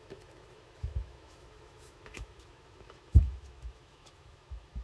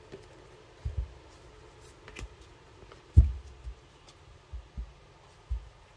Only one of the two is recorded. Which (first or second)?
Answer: second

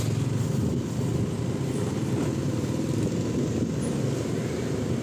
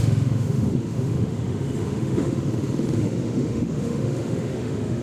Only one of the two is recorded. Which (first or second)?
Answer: first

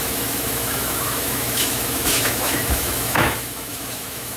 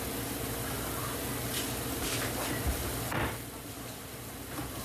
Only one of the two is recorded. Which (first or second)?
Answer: second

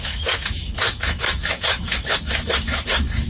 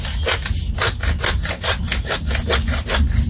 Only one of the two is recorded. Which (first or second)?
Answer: second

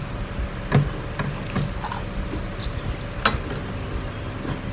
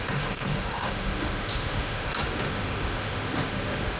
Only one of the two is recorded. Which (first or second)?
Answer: first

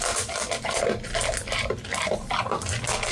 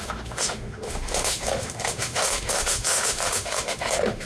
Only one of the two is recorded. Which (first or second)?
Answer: first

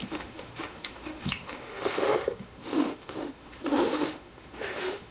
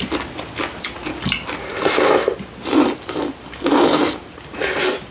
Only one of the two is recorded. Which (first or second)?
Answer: second